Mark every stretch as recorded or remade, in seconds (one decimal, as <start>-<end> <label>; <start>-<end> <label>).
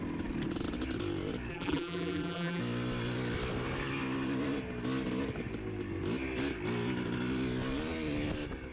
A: 0.0-1.5 recorded; 1.5-2.6 remade; 2.6-8.7 recorded